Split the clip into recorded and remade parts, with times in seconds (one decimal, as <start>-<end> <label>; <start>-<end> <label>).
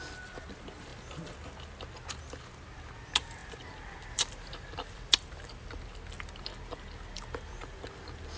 0.0-3.4 recorded; 3.4-5.8 remade; 5.8-8.4 recorded